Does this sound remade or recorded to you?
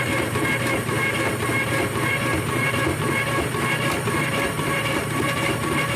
remade